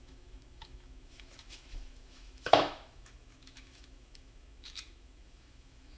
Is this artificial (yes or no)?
yes